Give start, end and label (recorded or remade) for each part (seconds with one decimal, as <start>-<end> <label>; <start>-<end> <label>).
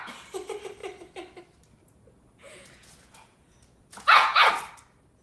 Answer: 0.0-1.8 recorded; 1.8-4.5 remade; 4.5-5.2 recorded